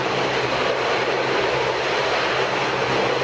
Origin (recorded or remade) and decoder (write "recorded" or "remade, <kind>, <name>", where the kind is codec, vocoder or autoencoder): recorded